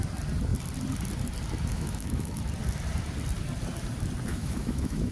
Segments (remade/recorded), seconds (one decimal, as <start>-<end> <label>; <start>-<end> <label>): 0.0-1.7 recorded; 1.7-2.4 remade; 2.4-4.3 recorded; 4.3-5.1 remade